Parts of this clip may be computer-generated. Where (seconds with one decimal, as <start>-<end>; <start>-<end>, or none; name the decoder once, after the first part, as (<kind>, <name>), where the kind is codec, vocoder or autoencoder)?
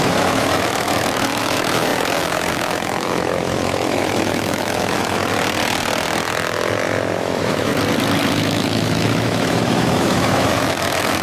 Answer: 0.0-5.2 (autoencoder, DAC-VAE); 7.2-7.7; 8.3-11.2